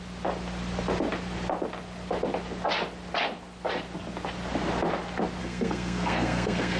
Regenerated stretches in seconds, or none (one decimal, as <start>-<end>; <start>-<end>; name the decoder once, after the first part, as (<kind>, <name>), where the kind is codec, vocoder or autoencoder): 5.4-6.8 (codec, SNAC)